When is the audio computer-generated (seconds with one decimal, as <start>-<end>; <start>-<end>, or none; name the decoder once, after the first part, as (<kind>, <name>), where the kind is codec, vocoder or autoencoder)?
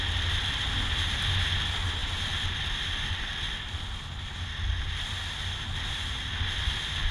none